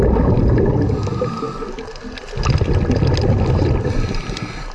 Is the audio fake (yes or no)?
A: no